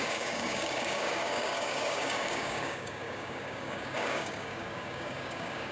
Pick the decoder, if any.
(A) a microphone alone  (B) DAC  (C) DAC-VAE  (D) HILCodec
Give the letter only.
B